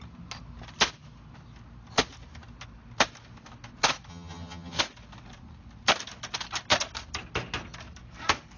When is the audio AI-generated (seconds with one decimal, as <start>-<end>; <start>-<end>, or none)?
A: 4.1-4.8